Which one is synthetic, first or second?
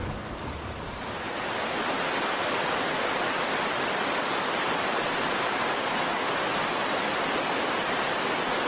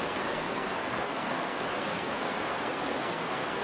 second